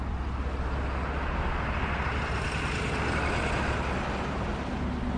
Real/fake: real